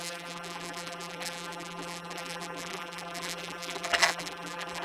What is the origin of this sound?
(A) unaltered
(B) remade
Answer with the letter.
B